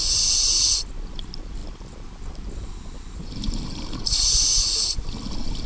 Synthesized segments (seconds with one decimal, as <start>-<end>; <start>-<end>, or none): 1.6-5.0